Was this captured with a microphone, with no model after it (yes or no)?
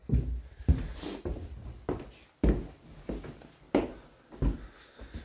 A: yes